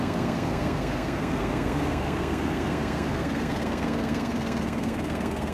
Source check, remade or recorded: remade